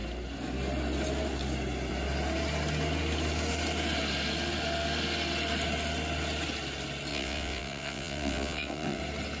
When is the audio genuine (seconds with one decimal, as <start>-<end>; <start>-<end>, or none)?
0.0-7.1; 9.0-9.4